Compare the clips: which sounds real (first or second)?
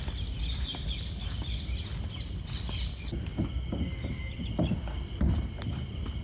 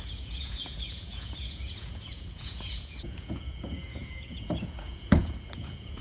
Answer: first